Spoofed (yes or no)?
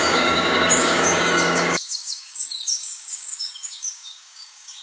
yes